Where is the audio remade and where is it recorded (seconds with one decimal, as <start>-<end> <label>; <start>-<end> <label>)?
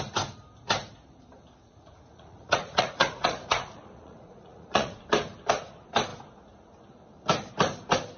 0.0-1.6 recorded; 1.6-5.0 remade; 5.0-8.2 recorded